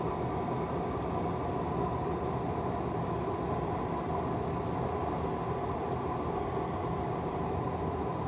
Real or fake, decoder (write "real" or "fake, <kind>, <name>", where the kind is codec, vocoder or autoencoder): real